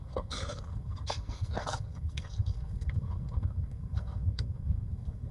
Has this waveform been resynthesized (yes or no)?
yes